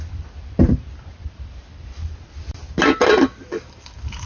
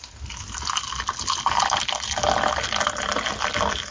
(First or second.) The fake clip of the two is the first